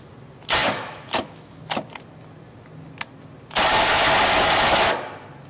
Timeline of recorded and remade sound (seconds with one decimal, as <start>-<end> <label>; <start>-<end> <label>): 0.0-0.6 recorded; 0.6-1.6 remade; 1.6-5.5 recorded